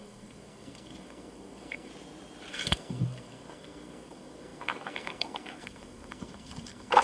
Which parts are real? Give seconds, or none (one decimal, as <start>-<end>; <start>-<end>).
1.9-2.5